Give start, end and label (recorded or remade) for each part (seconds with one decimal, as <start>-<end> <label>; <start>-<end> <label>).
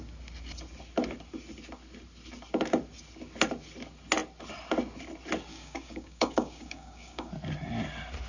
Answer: 0.0-5.5 recorded; 5.5-7.3 remade; 7.3-8.3 recorded